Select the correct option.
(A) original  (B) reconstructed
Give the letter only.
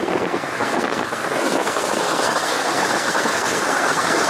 B